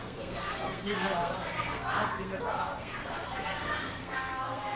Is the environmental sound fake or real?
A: fake